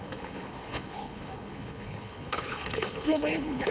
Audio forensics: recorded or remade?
remade